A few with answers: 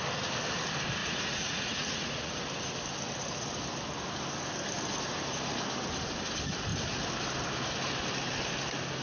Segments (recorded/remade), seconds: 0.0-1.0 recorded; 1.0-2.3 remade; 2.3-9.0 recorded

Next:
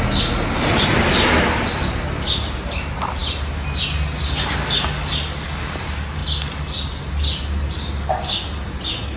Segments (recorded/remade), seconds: 0.0-9.2 recorded

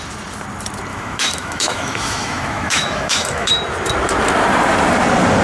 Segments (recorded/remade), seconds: 0.0-0.9 recorded; 0.9-3.5 remade; 3.5-5.4 recorded

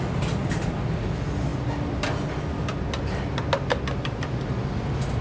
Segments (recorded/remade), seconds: 0.0-5.2 recorded

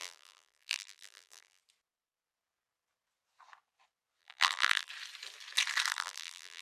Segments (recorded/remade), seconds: 0.0-1.6 remade; 1.6-4.2 recorded; 4.2-4.9 remade; 4.9-5.9 recorded; 5.9-6.6 remade